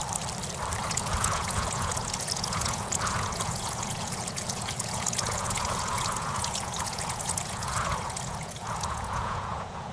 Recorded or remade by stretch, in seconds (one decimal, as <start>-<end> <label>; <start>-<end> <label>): 0.0-0.8 recorded; 0.8-9.9 remade